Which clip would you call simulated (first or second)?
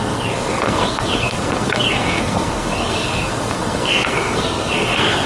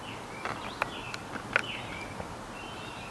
first